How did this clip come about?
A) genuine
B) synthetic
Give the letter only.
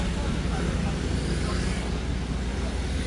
A